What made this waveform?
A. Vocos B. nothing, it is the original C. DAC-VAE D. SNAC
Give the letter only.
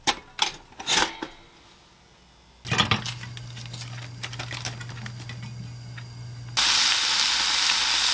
B